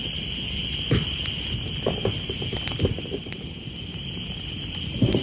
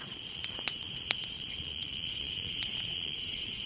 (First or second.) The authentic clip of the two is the first